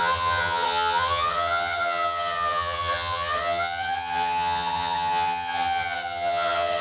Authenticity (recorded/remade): remade